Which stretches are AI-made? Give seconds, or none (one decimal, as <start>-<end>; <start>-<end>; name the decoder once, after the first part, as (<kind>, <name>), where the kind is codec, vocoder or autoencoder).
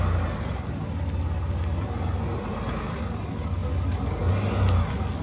none